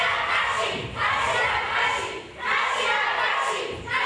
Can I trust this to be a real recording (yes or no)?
yes